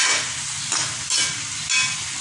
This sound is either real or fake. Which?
real